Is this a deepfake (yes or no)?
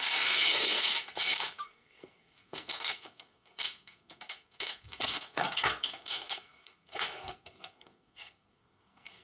yes